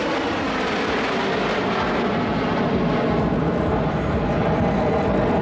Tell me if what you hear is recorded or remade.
recorded